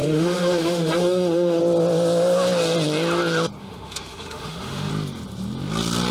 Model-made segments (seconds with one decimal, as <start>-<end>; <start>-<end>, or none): 0.0-1.6; 3.6-4.9